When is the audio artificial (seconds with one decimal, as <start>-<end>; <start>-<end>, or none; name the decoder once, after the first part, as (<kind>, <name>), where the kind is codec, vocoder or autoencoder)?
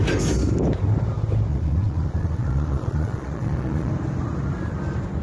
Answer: 1.5-3.9 (vocoder, Vocos)